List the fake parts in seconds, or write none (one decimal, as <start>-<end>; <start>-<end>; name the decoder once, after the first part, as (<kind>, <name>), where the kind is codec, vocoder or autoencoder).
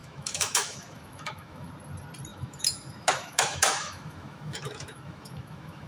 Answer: 0.0-1.7 (autoencoder, DAC-VAE); 2.3-5.9